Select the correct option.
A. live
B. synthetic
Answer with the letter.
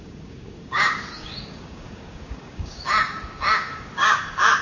B